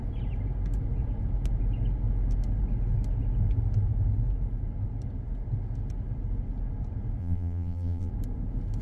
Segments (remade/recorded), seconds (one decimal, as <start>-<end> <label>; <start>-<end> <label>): 0.0-7.2 recorded; 7.2-8.1 remade; 8.1-8.8 recorded